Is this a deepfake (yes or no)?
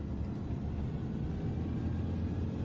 no